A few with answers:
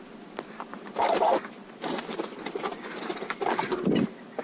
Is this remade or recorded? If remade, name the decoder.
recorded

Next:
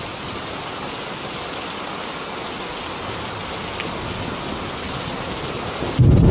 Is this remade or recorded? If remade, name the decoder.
recorded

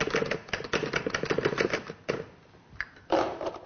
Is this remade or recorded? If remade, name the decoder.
recorded